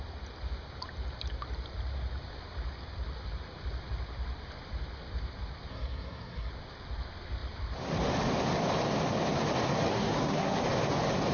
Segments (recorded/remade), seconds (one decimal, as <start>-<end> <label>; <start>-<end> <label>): 0.0-5.7 recorded; 5.7-6.5 remade; 6.5-9.9 recorded; 9.9-10.6 remade; 10.6-11.3 recorded